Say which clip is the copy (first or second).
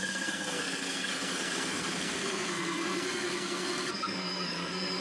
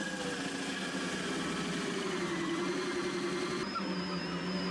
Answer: first